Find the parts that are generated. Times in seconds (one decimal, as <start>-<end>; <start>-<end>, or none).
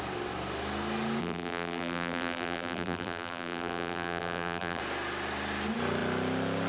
1.2-4.8